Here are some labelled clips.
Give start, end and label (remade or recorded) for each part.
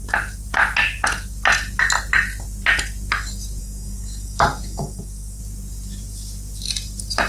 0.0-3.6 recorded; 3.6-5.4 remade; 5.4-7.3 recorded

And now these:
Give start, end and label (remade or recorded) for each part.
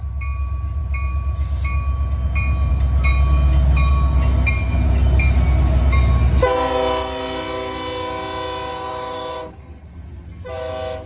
0.0-8.7 recorded; 8.7-9.7 remade; 9.7-11.1 recorded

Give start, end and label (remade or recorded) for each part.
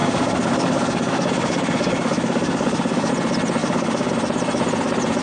0.0-3.1 remade; 3.1-3.6 recorded; 3.6-4.1 remade; 4.1-5.2 recorded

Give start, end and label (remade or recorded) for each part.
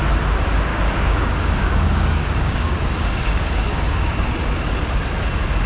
0.0-0.7 recorded; 0.7-4.1 remade; 4.1-5.7 recorded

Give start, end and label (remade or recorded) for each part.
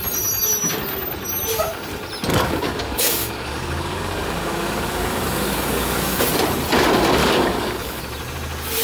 0.0-2.3 recorded; 2.3-6.2 remade; 6.2-7.2 recorded; 7.2-8.0 remade; 8.0-8.8 recorded